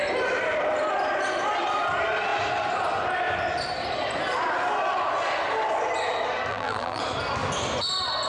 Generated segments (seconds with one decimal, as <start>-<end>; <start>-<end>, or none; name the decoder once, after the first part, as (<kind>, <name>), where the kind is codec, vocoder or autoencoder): 6.5-7.0 (vocoder, BigVGAN v2)